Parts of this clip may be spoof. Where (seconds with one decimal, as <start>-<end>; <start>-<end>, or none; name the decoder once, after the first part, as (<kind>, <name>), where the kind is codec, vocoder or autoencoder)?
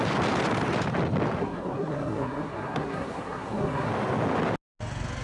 1.4-3.9 (codec, SNAC)